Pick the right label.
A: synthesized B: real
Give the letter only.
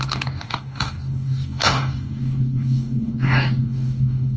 A